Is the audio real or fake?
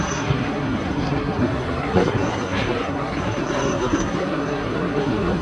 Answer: fake